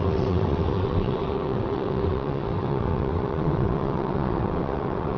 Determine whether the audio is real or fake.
fake